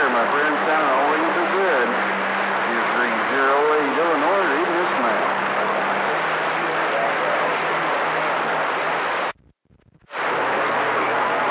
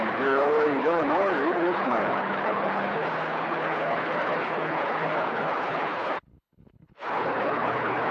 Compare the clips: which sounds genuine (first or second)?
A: first